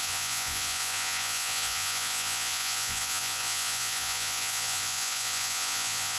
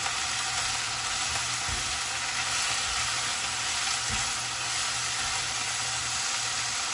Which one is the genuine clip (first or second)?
second